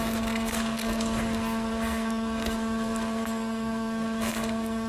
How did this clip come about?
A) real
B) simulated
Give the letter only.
B